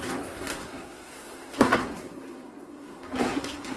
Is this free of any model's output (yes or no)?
no